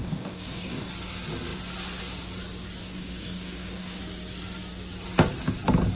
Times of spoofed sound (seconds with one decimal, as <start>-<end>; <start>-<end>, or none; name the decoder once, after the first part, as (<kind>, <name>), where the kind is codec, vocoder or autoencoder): 0.0-0.9 (codec, DAC); 2.8-4.0